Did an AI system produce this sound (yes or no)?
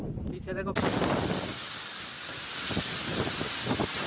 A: no